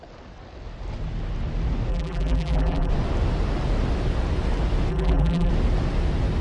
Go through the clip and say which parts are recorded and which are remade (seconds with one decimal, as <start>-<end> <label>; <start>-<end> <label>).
0.0-1.9 recorded; 1.9-2.9 remade; 2.9-4.9 recorded; 4.9-5.5 remade; 5.5-6.4 recorded